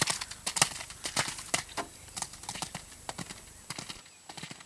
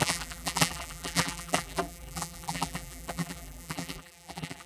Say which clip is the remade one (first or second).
second